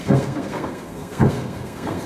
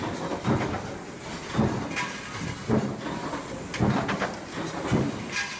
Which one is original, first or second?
second